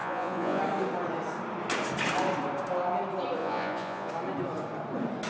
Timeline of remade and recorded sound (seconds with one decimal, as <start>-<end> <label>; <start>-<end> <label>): 0.0-0.6 remade; 0.6-3.4 recorded; 3.4-4.1 remade; 4.1-5.3 recorded